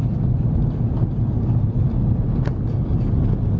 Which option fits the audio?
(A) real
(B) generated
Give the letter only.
A